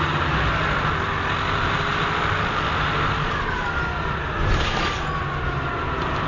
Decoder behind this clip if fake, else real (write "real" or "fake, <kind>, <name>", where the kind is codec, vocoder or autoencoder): real